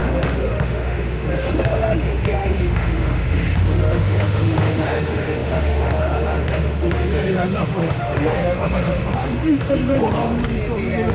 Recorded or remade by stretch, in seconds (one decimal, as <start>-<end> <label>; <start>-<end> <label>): 0.0-10.4 remade; 10.4-11.1 recorded